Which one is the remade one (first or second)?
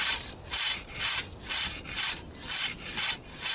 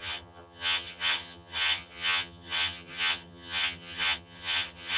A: second